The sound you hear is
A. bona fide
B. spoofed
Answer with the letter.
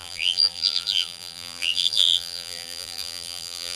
B